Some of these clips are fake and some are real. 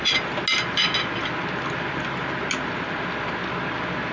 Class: real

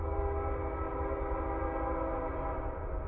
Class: real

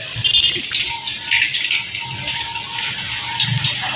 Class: real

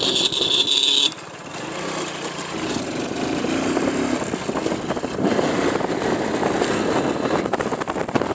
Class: real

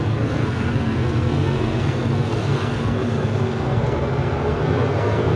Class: fake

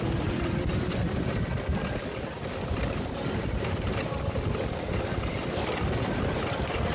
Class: real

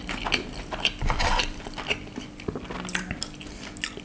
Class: real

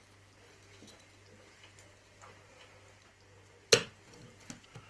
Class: real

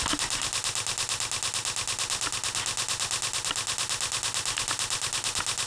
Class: real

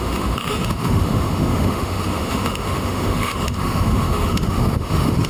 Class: fake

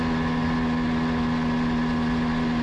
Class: real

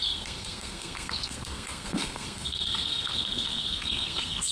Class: fake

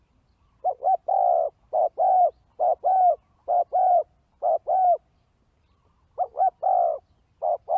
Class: real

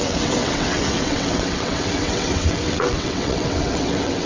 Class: fake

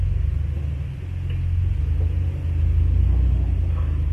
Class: real